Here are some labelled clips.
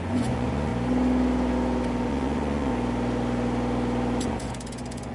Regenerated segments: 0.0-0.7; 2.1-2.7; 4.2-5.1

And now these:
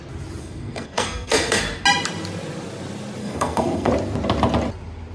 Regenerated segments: 0.4-1.6; 3.2-3.9

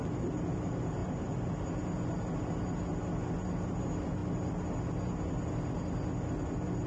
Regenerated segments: none

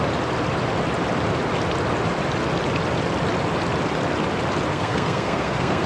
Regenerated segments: 4.7-5.9

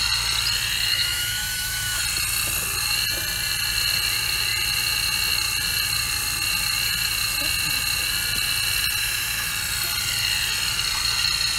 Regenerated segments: 0.9-2.0; 9.0-9.5

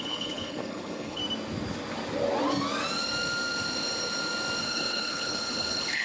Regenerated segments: 0.0-1.2; 4.6-6.0

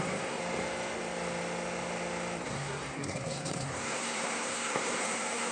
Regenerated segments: 0.0-0.4; 2.4-5.5

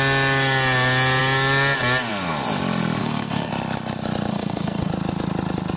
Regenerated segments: 3.0-3.5; 4.3-4.9